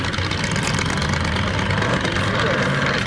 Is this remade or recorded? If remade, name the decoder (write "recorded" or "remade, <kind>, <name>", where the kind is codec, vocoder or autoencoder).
recorded